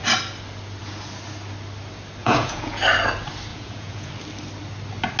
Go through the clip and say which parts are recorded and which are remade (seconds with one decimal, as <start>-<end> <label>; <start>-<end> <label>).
0.0-2.2 recorded; 2.2-2.8 remade; 2.8-3.5 recorded; 3.5-4.1 remade; 4.1-5.2 recorded